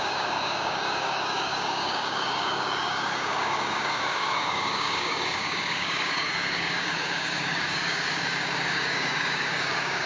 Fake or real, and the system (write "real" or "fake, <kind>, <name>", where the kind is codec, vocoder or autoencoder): fake, codec, DAC